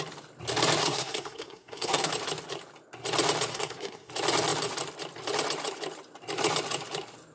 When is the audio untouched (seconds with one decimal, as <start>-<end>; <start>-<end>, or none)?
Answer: 0.0-0.8; 2.1-3.5; 4.1-7.3